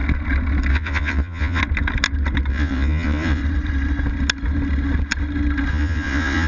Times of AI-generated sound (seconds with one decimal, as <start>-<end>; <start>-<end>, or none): 0.7-1.6; 2.5-3.4; 5.7-6.5